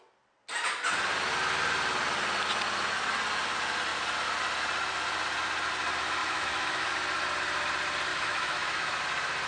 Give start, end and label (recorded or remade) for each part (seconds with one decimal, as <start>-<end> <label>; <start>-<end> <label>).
0.0-6.2 recorded; 6.2-6.9 remade; 6.9-8.1 recorded; 8.1-9.0 remade; 9.0-9.5 recorded